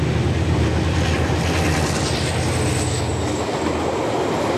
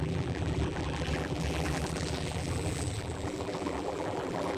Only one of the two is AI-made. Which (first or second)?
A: second